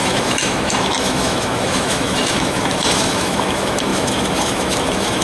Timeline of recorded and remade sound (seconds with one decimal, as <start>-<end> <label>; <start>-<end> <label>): 0.0-5.2 remade